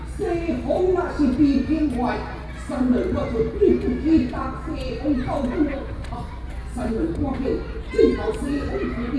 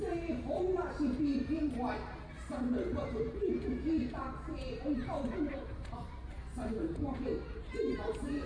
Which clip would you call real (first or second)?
first